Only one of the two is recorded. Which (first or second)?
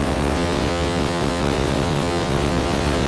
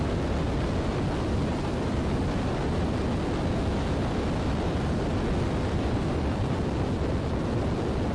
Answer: second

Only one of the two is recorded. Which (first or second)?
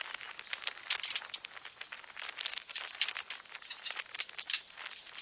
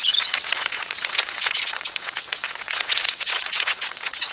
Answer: first